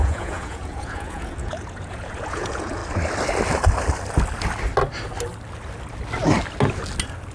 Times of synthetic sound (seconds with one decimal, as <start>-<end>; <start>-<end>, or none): 0.0-2.8